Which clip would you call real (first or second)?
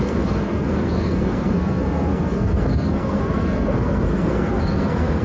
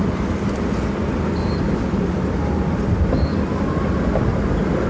second